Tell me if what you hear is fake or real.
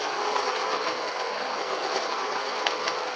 fake